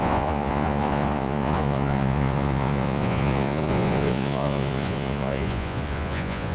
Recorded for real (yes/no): no